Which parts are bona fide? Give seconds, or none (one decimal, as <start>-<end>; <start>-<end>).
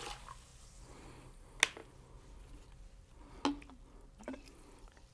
0.0-5.1